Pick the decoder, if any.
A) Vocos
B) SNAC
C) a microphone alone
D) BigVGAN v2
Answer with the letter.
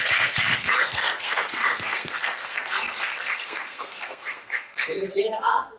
B